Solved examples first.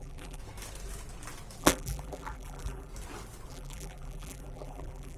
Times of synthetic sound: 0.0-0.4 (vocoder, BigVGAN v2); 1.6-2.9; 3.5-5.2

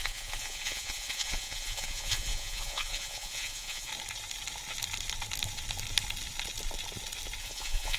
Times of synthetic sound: 0.0-3.9 (vocoder, Vocos); 7.4-8.0

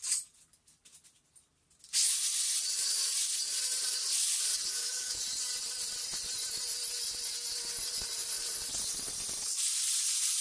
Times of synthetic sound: 4.7-5.2 (codec, DAC)

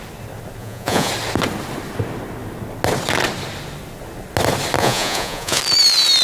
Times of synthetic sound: 0.6-1.1 (vocoder, Vocos); 4.8-5.6

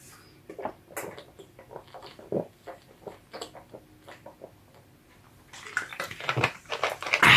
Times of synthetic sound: 5.9-6.7 (vocoder, BigVGAN v2)